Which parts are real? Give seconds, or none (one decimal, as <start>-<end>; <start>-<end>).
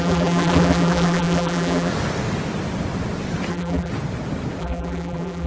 1.9-3.5; 3.9-4.6